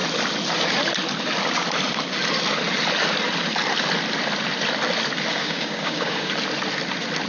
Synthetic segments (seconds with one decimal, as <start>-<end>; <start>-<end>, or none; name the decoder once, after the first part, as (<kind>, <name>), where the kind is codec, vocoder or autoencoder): 5.3-6.3 (codec, DAC)